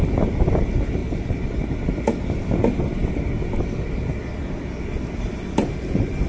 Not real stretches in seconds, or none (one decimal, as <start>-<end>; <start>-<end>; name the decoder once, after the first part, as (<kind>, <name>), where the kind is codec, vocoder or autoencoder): 1.0-1.7 (vocoder, BigVGAN v2)